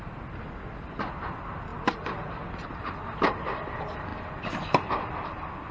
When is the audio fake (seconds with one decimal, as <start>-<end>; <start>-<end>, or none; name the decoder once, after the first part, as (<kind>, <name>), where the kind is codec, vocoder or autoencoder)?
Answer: 1.7-2.9 (vocoder, BigVGAN v2); 4.1-4.9